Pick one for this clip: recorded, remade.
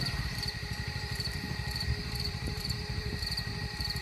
remade